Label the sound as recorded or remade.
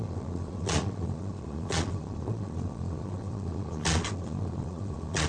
remade